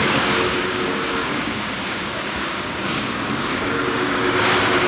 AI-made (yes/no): yes